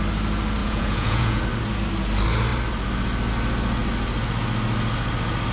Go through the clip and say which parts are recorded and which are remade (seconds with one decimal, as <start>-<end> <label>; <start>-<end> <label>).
0.0-0.6 recorded; 0.6-1.4 remade; 1.4-5.5 recorded